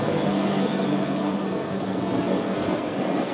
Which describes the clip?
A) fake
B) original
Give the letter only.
A